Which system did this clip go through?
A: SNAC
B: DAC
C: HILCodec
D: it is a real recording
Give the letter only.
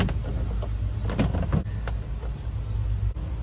D